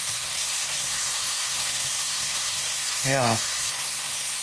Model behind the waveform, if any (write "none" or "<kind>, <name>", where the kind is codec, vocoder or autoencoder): codec, SNAC